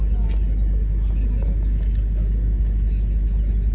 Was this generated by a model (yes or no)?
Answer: no